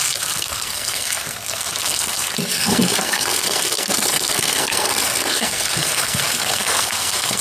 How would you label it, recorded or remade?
remade